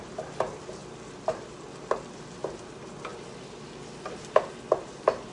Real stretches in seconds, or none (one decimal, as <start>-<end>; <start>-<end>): 0.0-5.3

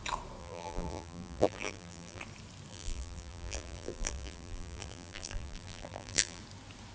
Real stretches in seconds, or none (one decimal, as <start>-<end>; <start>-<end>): 0.0-0.4; 2.2-2.7; 6.4-6.9